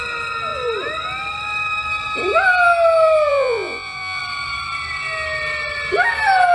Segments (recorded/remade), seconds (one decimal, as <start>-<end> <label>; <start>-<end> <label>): 0.0-3.3 recorded; 3.3-4.2 remade; 4.2-6.5 recorded

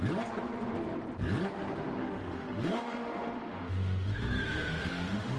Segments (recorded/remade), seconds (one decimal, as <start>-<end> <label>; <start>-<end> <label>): 0.0-2.0 recorded; 2.0-5.4 remade

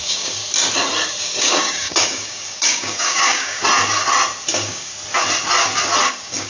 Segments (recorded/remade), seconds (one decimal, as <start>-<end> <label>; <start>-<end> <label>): 0.0-0.4 remade; 0.4-1.2 recorded; 1.2-3.6 remade; 3.6-4.5 recorded; 4.5-4.9 remade; 4.9-6.1 recorded; 6.1-6.5 remade